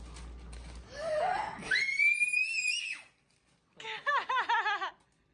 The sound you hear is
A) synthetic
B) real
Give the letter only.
B